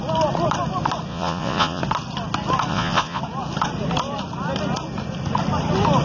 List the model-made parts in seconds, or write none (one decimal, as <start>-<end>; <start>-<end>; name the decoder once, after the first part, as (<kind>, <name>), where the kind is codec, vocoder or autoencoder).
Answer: 1.1-1.8 (vocoder, Vocos); 2.7-3.2